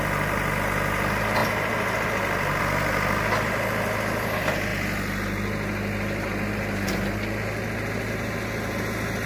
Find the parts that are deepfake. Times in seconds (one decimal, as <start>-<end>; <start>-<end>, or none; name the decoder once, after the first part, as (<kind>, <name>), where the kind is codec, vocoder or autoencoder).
none